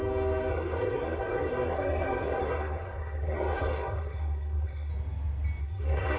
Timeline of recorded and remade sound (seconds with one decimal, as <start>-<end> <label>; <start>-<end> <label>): 0.0-0.5 recorded; 0.5-4.9 remade; 4.9-5.6 recorded; 5.6-6.2 remade